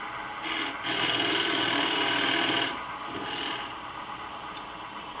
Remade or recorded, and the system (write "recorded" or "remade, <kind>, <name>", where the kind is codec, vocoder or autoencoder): recorded